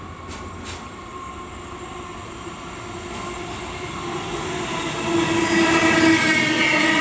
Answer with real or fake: real